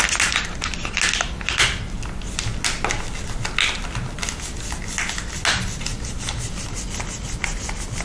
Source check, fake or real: real